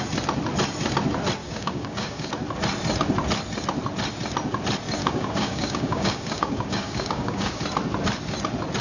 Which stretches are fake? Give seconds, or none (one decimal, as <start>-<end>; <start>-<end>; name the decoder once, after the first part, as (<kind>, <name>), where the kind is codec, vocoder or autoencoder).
1.4-2.3 (codec, DAC); 5.0-7.6